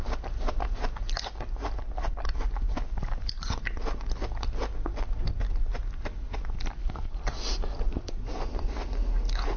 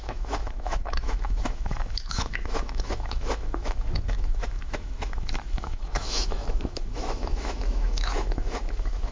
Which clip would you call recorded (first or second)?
first